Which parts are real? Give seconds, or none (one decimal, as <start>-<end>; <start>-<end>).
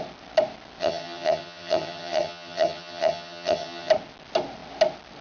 0.0-0.8; 3.9-5.2